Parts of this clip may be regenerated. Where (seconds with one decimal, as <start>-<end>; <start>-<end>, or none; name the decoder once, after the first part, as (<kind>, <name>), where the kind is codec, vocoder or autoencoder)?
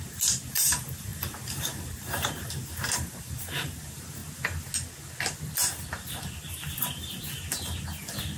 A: 0.0-4.2 (vocoder, BigVGAN v2)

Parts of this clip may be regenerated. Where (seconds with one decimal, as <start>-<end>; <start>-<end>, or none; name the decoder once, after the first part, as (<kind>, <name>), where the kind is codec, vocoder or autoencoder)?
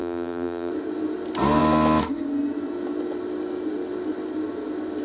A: 0.0-0.7 (vocoder, BigVGAN v2)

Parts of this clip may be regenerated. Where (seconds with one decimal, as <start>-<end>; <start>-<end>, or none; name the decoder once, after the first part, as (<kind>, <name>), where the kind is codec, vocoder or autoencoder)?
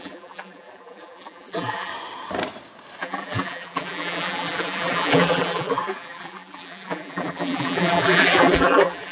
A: 0.0-1.9 (vocoder, BigVGAN v2); 3.0-9.1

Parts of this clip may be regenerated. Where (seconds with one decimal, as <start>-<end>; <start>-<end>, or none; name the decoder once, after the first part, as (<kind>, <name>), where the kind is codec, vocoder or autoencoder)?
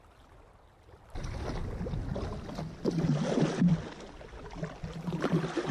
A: none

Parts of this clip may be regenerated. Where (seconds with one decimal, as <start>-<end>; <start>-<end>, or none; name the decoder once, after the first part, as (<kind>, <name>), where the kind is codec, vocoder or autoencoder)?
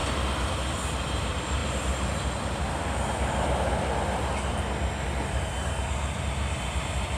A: 0.8-1.6 (vocoder, BigVGAN v2); 5.9-7.2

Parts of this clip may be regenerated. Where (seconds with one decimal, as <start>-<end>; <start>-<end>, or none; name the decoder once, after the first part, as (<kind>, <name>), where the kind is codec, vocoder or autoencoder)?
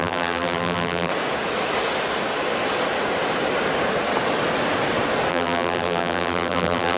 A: 0.0-1.1 (vocoder, BigVGAN v2); 5.3-7.0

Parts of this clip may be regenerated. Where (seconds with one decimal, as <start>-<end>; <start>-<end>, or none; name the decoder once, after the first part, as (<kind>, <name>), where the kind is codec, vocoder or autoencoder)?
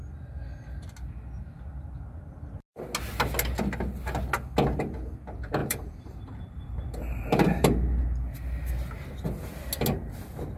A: 5.6-8.0 (vocoder, BigVGAN v2)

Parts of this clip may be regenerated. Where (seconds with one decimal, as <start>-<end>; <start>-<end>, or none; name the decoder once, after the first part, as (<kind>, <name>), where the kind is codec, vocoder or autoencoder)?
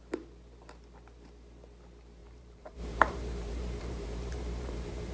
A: 2.2-5.1 (vocoder, BigVGAN v2)